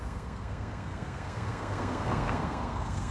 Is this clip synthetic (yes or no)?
yes